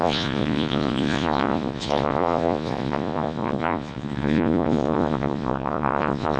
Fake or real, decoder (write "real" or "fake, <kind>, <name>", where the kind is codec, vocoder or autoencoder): fake, vocoder, Vocos